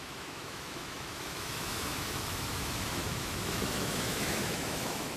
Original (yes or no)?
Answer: no